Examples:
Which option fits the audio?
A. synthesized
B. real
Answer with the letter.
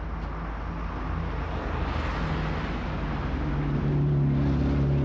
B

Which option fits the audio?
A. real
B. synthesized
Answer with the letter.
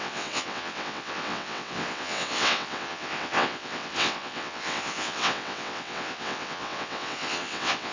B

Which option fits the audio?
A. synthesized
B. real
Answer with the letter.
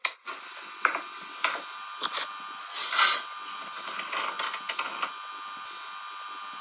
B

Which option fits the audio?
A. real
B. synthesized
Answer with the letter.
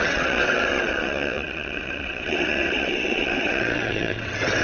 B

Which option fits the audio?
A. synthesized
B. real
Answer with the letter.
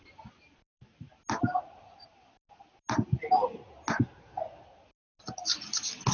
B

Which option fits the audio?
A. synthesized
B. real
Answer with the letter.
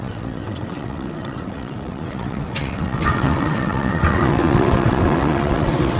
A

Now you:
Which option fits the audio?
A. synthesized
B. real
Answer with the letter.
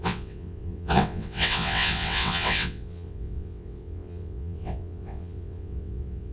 A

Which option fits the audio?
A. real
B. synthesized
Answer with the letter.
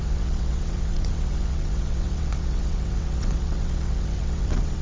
B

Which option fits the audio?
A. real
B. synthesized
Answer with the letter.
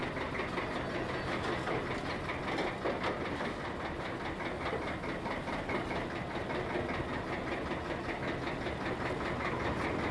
A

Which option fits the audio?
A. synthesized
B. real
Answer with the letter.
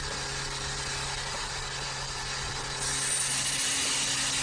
B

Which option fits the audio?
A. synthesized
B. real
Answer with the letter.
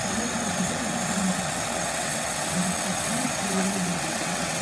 A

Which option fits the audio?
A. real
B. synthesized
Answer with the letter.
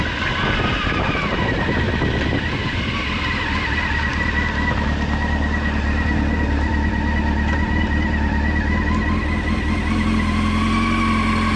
A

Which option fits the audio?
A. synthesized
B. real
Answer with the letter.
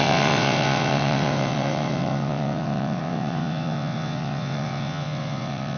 A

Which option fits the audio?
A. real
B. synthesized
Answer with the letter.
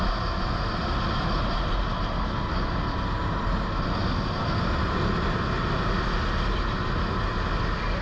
A